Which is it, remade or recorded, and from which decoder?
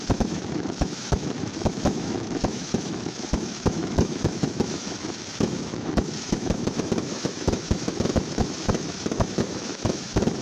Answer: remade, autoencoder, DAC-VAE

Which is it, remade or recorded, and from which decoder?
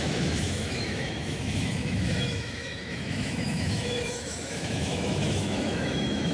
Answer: remade, autoencoder, DAC-VAE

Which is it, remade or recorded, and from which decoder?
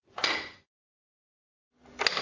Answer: recorded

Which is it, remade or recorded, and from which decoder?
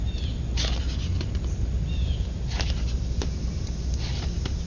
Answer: recorded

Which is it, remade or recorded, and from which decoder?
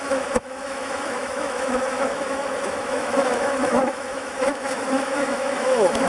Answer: remade, autoencoder, DAC-VAE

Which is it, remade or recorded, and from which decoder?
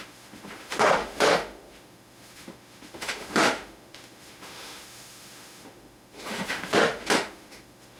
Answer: remade, autoencoder, DAC-VAE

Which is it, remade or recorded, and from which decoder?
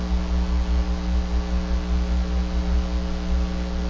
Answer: recorded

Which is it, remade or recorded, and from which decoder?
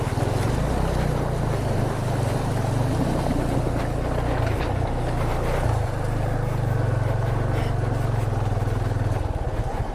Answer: recorded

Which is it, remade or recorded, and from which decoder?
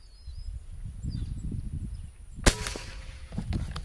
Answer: recorded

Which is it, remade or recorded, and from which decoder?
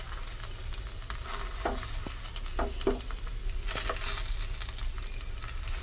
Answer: recorded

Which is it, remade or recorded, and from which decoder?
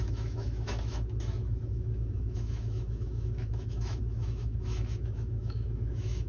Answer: remade, autoencoder, DAC-VAE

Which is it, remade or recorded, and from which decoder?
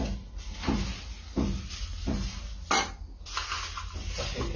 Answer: recorded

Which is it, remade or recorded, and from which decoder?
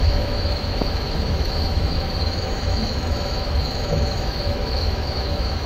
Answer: remade, autoencoder, DAC-VAE